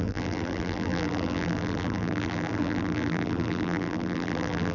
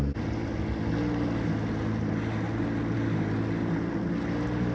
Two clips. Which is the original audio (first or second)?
second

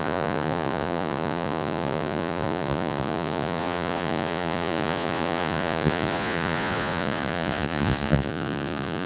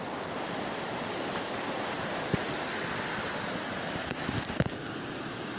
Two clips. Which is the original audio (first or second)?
second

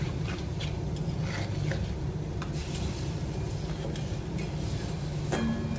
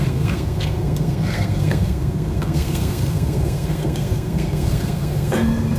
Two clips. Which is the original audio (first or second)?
first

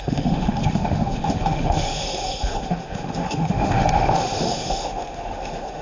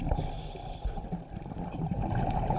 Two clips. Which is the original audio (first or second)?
second